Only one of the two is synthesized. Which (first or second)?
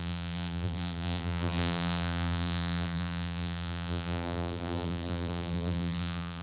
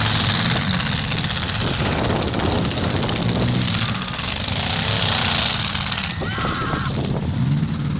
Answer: first